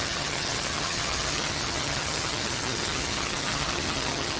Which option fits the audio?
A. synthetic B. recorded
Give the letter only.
A